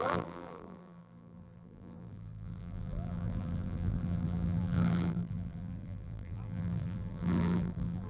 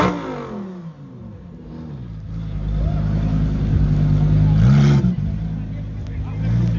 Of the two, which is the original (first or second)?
second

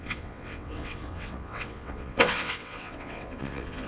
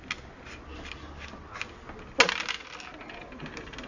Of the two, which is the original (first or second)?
second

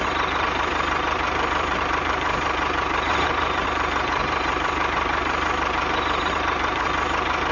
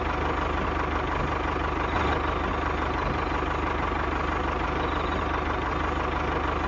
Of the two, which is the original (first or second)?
second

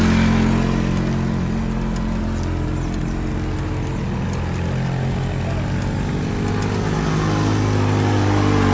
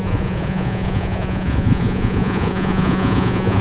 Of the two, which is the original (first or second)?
first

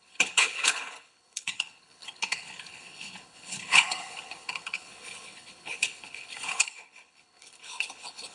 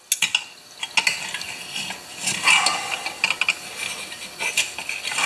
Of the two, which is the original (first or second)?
second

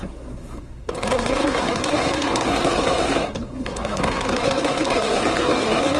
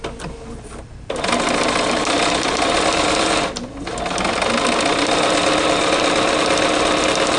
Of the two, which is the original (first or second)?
second